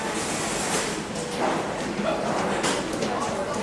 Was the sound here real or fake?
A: real